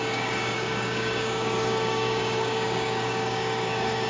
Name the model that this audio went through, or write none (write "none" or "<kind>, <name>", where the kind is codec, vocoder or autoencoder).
codec, DAC